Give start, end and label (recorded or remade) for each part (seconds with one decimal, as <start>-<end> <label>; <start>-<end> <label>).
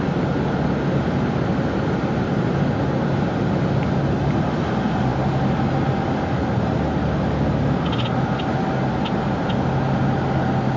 0.0-10.8 recorded